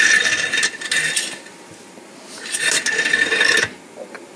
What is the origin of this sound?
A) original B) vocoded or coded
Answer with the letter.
A